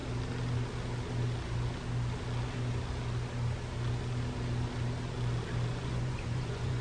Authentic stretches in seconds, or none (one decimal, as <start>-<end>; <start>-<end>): 0.0-5.7